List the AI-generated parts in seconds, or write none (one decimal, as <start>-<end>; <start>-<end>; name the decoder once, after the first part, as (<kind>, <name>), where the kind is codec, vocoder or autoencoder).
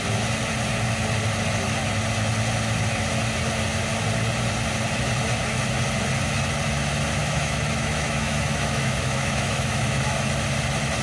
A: 7.2-10.0 (autoencoder, DAC-VAE)